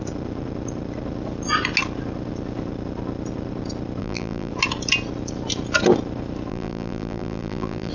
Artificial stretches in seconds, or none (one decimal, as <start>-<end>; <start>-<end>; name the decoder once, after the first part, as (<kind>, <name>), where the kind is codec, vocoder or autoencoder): 4.0-4.5 (vocoder, BigVGAN v2); 6.5-7.9

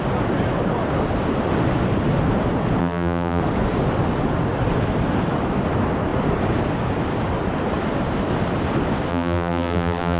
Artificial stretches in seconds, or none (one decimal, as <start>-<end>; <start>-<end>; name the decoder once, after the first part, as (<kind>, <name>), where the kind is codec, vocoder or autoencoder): 2.8-3.4 (vocoder, BigVGAN v2); 9.1-10.2

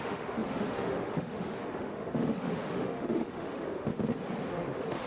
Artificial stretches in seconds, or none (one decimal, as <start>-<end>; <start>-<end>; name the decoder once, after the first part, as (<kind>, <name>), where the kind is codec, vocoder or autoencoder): 0.0-3.9 (autoencoder, DAC-VAE); 4.5-5.1

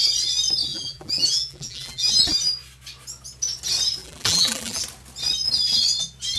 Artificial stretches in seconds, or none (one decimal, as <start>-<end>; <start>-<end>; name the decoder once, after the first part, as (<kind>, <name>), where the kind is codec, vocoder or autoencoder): 0.7-2.1 (vocoder, BigVGAN v2); 4.0-4.8

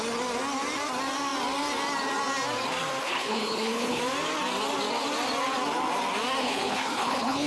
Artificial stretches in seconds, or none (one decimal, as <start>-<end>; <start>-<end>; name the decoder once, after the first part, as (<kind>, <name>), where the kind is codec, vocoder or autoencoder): 3.0-4.0 (codec, HILCodec); 6.4-7.5

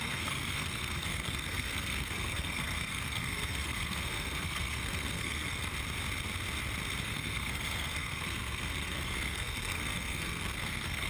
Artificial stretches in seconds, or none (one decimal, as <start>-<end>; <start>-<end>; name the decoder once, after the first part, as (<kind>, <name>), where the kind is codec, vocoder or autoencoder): 0.0-5.7 (codec, SNAC); 7.0-11.1

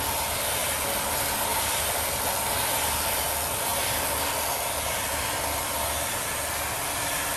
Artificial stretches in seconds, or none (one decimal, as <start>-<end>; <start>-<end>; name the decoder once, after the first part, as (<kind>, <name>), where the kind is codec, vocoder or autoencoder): 1.5-2.2 (vocoder, BigVGAN v2)

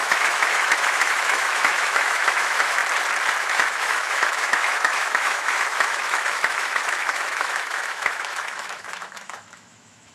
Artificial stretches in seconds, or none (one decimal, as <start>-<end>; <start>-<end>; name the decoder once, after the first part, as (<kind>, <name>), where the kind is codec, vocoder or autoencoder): 0.0-2.8 (autoencoder, DAC-VAE); 3.4-10.1